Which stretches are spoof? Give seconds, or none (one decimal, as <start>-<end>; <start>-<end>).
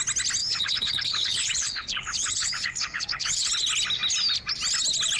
0.4-3.5